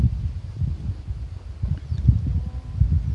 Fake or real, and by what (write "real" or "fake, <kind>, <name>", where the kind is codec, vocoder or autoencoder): real